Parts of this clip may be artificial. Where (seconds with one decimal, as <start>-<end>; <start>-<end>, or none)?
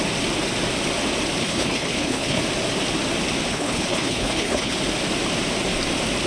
1.4-2.4; 3.5-4.8